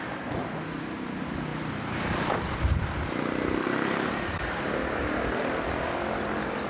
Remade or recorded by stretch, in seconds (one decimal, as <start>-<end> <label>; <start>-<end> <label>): 0.0-1.5 recorded; 1.5-4.1 remade; 4.1-6.7 recorded